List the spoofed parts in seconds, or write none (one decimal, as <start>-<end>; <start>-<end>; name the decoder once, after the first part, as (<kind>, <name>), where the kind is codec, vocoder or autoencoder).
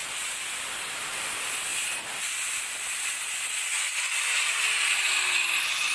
none